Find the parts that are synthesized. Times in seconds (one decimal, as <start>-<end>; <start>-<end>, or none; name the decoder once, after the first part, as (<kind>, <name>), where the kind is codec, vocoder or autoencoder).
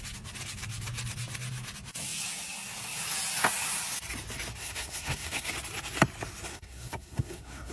4.6-5.5 (codec, SNAC); 6.5-7.7